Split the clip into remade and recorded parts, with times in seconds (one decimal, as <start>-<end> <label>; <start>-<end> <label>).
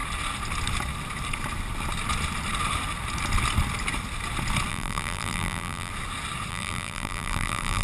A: 0.0-4.7 recorded; 4.7-5.9 remade; 5.9-6.5 recorded; 6.5-7.8 remade